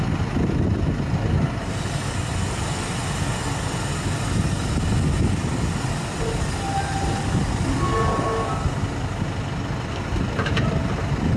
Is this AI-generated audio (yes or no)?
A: no